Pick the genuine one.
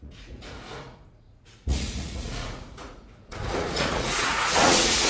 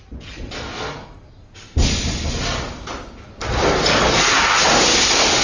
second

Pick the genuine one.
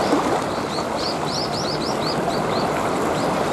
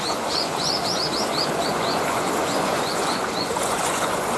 first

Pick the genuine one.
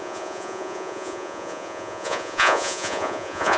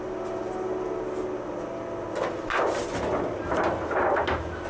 second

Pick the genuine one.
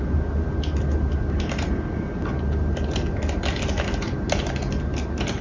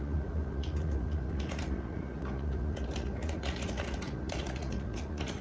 first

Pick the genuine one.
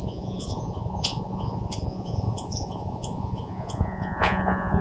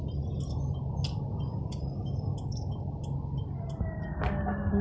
second